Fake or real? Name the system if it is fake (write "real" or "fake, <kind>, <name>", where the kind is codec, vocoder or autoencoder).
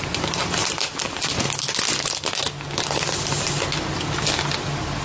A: real